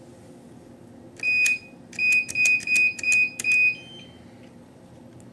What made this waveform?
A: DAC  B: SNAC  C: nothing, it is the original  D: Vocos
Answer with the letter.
C